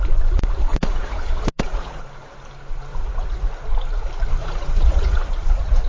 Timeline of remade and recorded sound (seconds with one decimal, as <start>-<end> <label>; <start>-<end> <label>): 0.0-0.7 recorded; 0.7-2.0 remade; 2.0-2.9 recorded; 2.9-3.5 remade; 3.5-4.4 recorded; 4.4-5.9 remade